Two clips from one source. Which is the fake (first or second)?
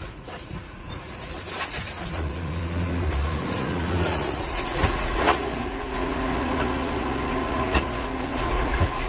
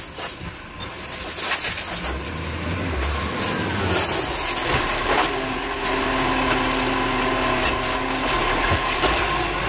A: first